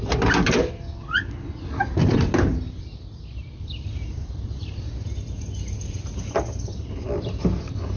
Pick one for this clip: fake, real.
real